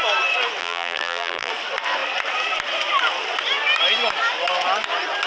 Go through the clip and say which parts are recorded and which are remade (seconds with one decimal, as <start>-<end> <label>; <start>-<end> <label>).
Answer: 0.0-0.6 recorded; 0.6-1.5 remade; 1.5-5.3 recorded